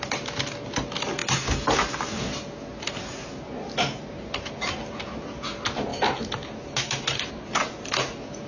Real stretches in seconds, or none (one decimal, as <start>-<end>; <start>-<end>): 0.0-8.5